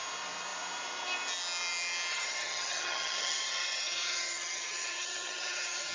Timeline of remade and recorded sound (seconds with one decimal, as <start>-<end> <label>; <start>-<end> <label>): 0.0-2.1 recorded; 2.1-5.9 remade